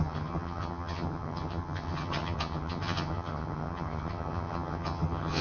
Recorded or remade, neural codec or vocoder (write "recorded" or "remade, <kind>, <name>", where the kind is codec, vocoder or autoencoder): remade, vocoder, HiFi-GAN